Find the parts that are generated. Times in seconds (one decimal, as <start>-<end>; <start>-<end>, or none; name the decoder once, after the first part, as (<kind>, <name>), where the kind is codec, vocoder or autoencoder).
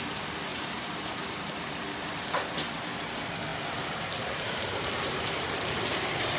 0.5-1.8 (vocoder, BigVGAN v2); 3.5-6.4